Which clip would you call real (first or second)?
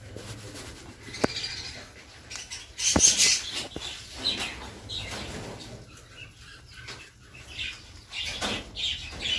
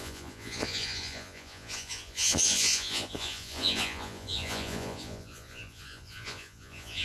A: first